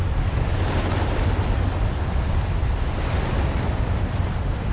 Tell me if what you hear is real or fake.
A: real